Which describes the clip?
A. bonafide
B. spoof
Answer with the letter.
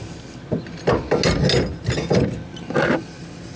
A